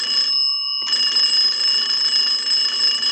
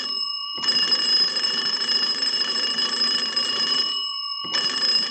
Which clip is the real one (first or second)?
first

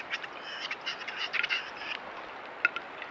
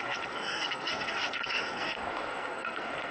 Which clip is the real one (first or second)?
first